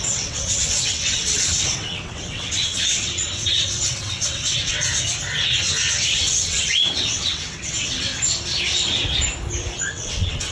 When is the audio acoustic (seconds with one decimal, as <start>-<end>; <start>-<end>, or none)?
4.8-6.2; 8.1-9.9